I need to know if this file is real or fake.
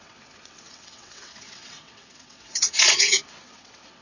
fake